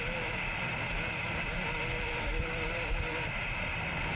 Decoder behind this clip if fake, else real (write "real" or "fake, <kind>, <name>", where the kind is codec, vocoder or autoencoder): real